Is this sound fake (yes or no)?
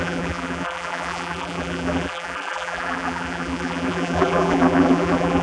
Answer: yes